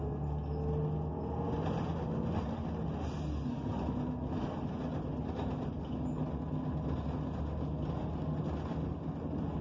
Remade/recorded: recorded